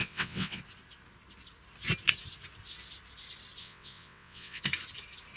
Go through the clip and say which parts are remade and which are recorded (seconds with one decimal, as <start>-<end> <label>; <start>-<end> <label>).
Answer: 0.0-0.6 remade; 0.6-3.6 recorded; 3.6-4.6 remade; 4.6-5.4 recorded